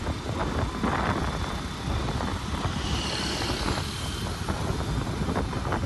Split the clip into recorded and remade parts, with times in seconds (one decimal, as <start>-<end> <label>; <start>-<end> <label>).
0.0-5.9 recorded